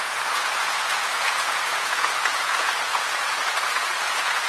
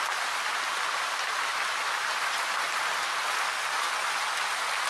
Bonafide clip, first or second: second